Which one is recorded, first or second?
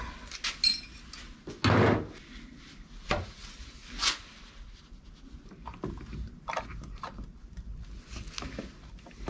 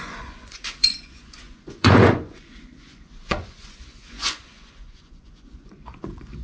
first